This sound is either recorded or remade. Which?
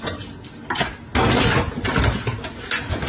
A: recorded